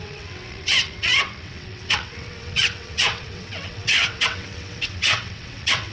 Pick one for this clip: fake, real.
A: fake